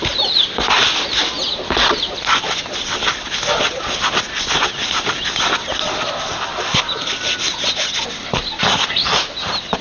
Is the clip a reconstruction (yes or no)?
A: no